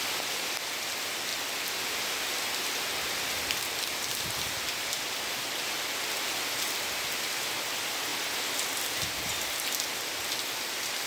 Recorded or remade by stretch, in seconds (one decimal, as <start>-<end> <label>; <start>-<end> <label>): 0.0-1.3 recorded; 1.3-3.6 remade; 3.6-11.1 recorded